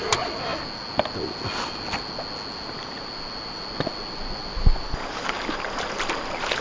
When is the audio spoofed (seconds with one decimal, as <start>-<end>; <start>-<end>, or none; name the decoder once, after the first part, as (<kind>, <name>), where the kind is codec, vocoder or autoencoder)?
none